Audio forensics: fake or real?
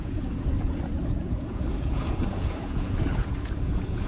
fake